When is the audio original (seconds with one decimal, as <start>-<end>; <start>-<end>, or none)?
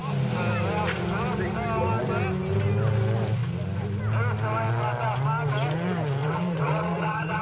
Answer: 0.0-6.2